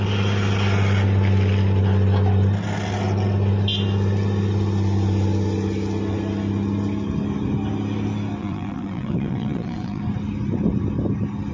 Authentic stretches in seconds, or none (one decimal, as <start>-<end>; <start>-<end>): 0.0-8.4; 10.0-11.5